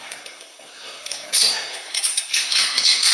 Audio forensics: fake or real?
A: fake